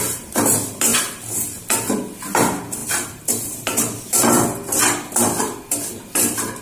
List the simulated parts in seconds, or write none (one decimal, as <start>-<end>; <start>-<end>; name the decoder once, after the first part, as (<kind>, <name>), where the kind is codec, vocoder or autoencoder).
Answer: 0.9-1.9 (vocoder, BigVGAN v2); 2.8-6.6